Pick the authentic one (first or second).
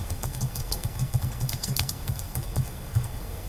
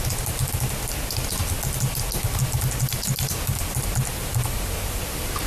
second